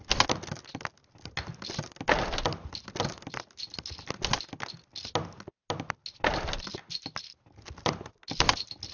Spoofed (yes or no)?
no